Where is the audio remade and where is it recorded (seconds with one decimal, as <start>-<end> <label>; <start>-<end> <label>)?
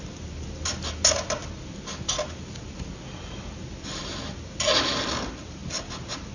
0.0-6.3 recorded